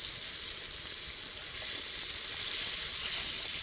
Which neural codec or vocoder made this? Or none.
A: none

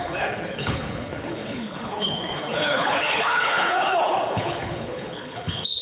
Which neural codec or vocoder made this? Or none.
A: codec, HILCodec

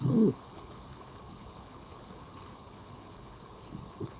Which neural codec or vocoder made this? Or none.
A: codec, HILCodec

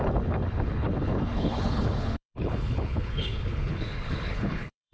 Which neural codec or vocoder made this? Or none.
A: codec, HILCodec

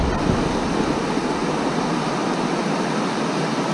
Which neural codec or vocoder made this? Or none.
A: none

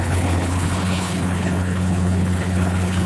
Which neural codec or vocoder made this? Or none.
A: codec, HILCodec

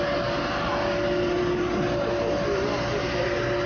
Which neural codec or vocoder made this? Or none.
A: none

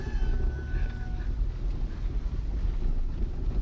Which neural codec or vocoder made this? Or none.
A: none